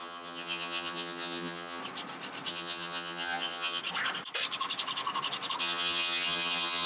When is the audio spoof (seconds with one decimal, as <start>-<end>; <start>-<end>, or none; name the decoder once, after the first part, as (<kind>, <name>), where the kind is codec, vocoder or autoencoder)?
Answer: 0.0-1.8 (vocoder, HiFi-GAN); 2.5-3.8; 5.6-6.9